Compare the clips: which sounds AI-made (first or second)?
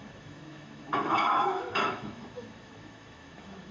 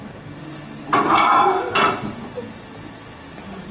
first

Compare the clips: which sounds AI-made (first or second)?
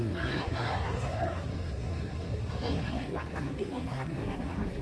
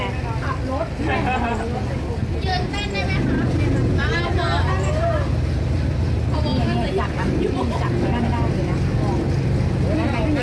first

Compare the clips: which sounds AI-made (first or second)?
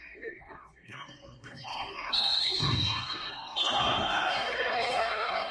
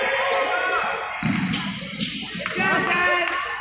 first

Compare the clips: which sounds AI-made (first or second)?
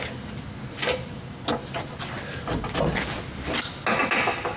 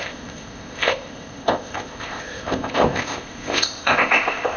second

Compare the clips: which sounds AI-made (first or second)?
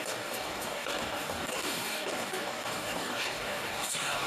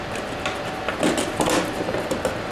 first